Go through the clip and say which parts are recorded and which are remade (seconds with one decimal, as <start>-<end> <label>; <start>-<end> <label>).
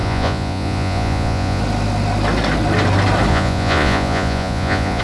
0.0-1.6 remade; 1.6-3.3 recorded; 3.3-5.0 remade